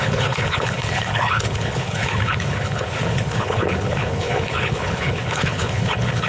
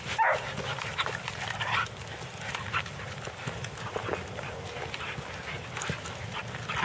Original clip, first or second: second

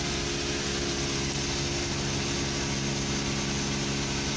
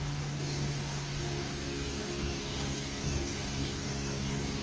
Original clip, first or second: first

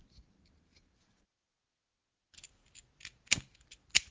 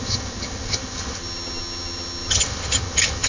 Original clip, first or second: first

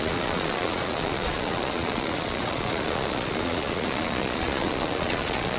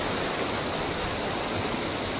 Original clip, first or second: second